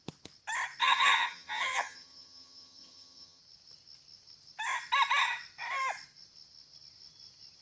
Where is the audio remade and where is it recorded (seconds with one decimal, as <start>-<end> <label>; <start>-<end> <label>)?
0.0-0.8 recorded; 0.8-3.4 remade; 3.4-7.6 recorded